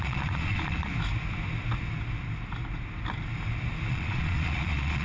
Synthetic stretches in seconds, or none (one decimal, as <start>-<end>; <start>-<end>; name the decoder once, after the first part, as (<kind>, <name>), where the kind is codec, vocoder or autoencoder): 0.0-0.9 (vocoder, Vocos); 3.9-5.0